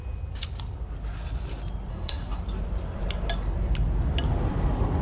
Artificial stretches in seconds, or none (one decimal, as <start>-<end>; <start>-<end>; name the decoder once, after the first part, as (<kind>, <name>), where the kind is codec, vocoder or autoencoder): 1.9-2.4 (codec, SNAC)